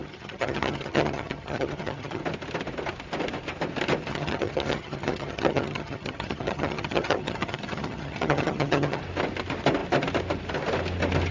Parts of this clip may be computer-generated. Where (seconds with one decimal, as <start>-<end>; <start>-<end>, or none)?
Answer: 0.0-2.2; 4.1-9.0